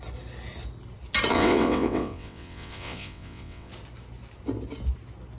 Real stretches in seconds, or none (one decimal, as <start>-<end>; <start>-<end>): 0.0-1.3; 3.7-5.4